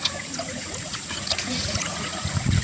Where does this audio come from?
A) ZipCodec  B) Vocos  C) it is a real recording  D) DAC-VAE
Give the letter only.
B